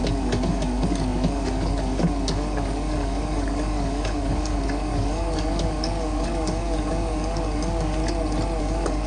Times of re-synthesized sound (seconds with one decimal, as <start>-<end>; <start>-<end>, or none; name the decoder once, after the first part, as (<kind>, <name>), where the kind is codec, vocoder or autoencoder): 0.0-8.0 (codec, DAC); 8.6-9.1